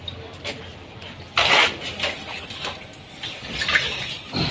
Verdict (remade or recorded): recorded